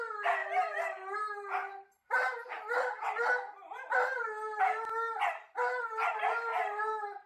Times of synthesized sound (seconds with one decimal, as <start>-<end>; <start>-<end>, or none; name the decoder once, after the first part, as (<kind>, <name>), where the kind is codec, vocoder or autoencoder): 0.4-4.6 (vocoder, BigVGAN v2); 6.5-7.3